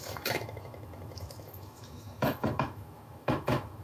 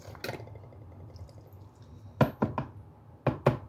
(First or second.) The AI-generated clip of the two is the first